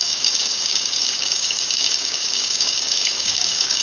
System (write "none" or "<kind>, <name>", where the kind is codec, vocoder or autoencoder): codec, DAC